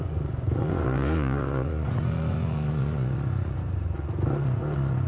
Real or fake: fake